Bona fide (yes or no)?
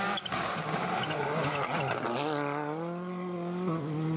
yes